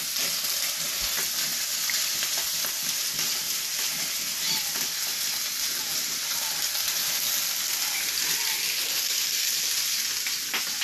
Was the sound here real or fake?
real